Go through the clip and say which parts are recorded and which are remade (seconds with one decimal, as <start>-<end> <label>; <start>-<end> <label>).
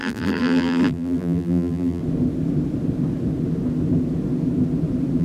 0.0-2.0 remade; 2.0-5.2 recorded